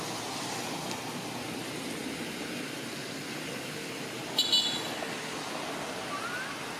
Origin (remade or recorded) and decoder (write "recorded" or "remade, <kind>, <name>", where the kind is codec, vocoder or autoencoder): recorded